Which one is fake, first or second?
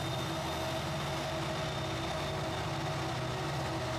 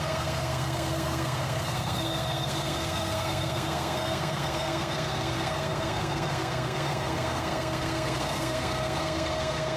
second